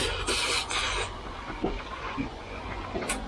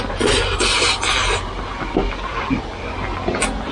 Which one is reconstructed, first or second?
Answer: first